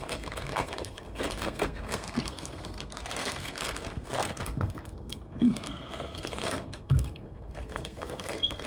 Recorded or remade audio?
remade